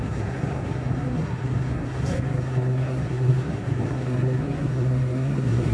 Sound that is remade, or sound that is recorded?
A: remade